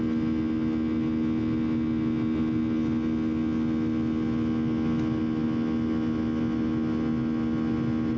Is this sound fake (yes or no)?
no